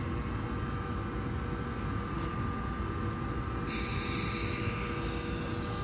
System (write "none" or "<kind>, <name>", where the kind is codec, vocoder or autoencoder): none